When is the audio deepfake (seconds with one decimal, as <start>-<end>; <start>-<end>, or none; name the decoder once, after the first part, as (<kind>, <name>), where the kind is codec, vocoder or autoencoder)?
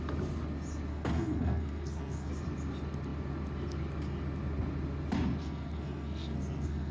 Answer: 0.9-2.3 (codec, SNAC); 5.4-6.9